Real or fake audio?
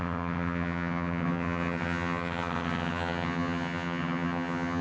fake